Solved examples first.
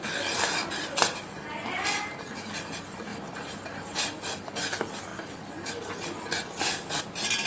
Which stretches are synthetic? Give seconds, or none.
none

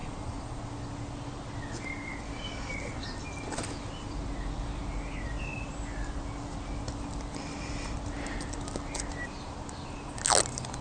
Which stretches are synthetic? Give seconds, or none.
0.0-0.6 (vocoder, Vocos)

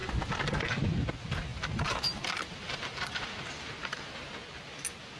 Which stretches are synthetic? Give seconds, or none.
1.5-4.3 (vocoder, BigVGAN v2)

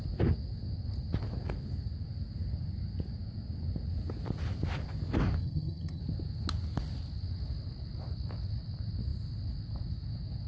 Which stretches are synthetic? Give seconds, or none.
5.4-6.0 (vocoder, HiFi-GAN)

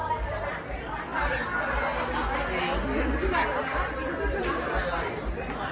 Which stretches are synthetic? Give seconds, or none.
none

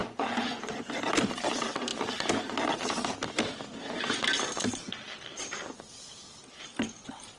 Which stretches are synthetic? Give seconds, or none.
0.0-0.7 (vocoder, Vocos)